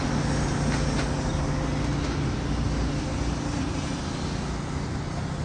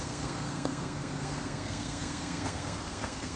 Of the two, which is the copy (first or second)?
second